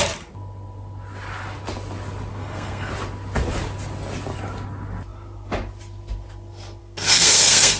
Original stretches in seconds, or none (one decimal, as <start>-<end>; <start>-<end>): 0.0-2.3; 2.9-6.8